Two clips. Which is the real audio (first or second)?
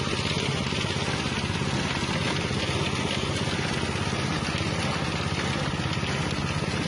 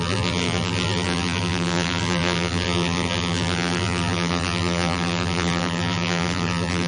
first